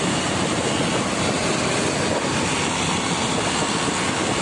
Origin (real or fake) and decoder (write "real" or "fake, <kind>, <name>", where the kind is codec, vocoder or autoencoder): real